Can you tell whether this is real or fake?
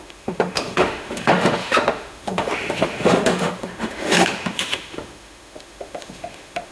fake